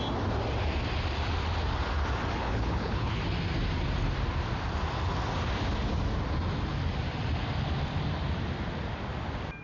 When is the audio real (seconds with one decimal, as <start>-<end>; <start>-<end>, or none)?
0.0-2.4; 3.2-9.6